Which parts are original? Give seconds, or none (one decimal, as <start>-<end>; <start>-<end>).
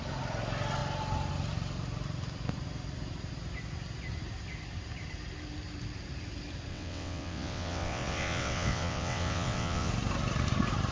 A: 0.0-6.7; 9.9-10.9